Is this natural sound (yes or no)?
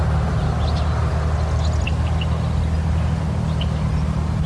yes